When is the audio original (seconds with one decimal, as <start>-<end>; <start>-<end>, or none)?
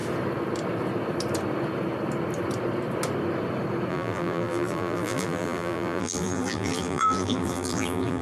0.0-3.9